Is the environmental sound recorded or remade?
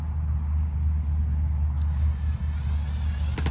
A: recorded